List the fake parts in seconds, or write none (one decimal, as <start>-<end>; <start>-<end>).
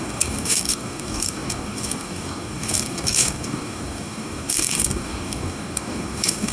0.0-6.5